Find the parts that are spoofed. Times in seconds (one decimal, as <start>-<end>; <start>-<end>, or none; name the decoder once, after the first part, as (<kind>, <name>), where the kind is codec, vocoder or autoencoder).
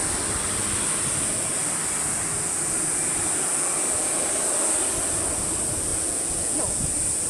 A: 5.9-6.6 (vocoder, Vocos)